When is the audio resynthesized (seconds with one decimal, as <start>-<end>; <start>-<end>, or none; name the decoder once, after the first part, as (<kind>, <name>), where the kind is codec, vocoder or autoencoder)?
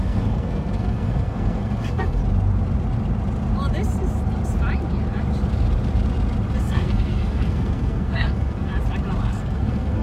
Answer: 0.0-2.2 (codec, SNAC); 6.6-8.7; 9.3-10.0